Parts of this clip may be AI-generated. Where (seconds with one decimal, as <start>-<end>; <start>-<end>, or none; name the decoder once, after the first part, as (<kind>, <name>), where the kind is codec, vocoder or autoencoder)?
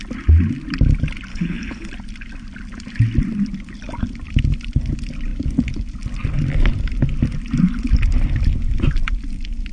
1.3-1.9 (codec, HILCodec)